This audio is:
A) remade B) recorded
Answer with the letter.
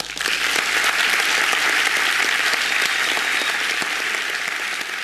A